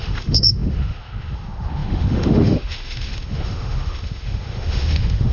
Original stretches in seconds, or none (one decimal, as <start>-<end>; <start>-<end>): none